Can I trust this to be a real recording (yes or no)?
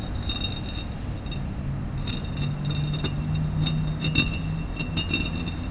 yes